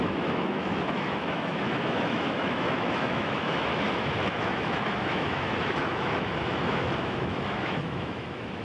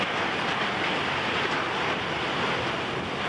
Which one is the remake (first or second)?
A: first